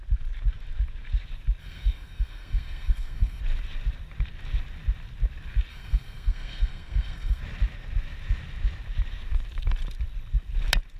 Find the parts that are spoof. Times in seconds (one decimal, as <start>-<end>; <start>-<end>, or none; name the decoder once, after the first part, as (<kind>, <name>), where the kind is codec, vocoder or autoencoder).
1.6-3.4 (codec, SNAC); 5.7-7.4